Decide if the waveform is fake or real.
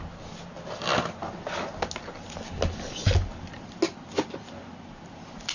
real